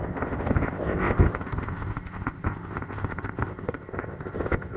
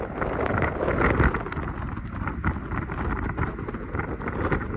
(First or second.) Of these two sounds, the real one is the second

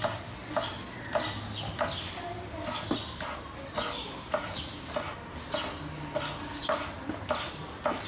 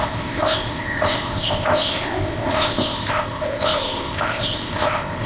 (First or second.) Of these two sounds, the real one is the first